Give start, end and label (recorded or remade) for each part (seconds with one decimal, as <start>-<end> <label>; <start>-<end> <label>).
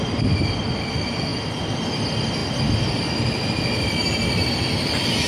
0.0-5.3 recorded